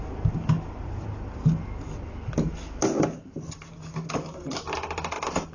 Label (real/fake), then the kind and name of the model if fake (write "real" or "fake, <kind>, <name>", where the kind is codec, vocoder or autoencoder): real